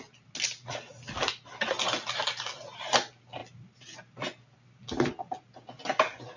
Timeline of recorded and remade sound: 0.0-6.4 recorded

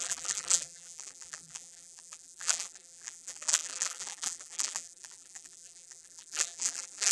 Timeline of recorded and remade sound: 0.0-7.1 remade

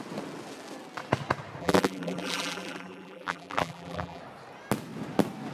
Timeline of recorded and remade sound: 0.0-1.6 recorded; 1.6-4.2 remade; 4.2-5.5 recorded